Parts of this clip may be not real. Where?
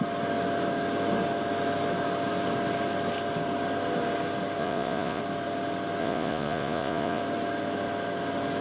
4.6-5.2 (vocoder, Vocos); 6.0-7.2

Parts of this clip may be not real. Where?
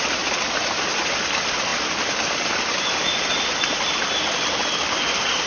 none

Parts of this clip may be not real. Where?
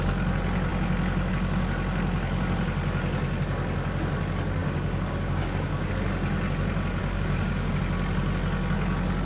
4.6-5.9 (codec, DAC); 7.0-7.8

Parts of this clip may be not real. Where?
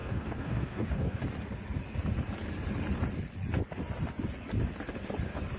0.0-1.2 (codec, SNAC)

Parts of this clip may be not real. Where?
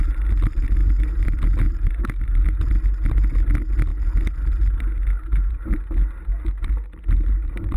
0.8-2.6 (vocoder, BigVGAN v2)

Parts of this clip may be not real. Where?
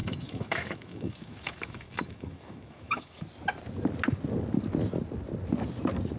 0.0-3.2 (autoencoder, DAC-VAE)